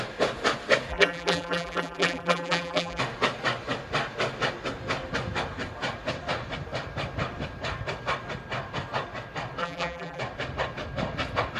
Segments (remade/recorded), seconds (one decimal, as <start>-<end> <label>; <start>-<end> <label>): 0.0-0.9 recorded; 0.9-3.0 remade; 3.0-9.6 recorded; 9.6-10.2 remade; 10.2-11.6 recorded